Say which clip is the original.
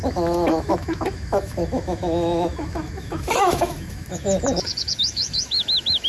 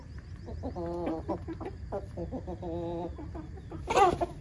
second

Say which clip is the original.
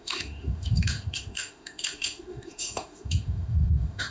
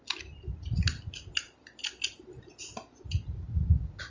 second